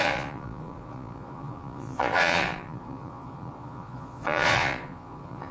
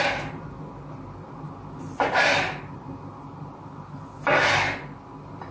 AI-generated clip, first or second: first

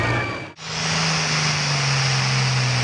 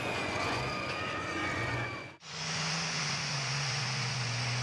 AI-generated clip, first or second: second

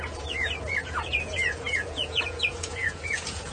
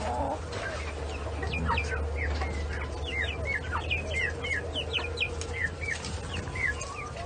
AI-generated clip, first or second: first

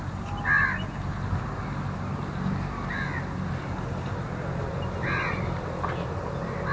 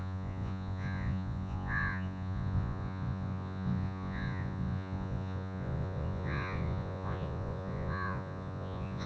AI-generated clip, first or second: second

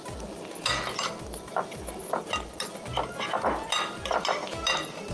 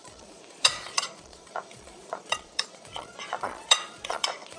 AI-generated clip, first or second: second